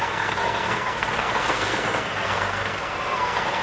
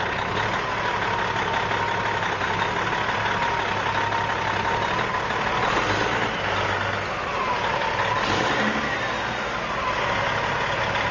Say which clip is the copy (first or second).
first